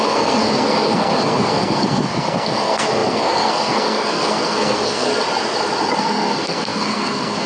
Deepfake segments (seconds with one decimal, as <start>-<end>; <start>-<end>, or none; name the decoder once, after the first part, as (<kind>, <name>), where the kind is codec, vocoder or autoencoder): 0.0-5.1 (codec, SNAC); 6.0-7.5